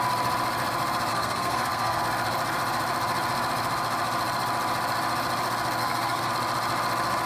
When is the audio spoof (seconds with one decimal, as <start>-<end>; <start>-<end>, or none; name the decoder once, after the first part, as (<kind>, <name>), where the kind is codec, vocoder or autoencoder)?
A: 1.1-2.0 (codec, SNAC); 5.8-6.3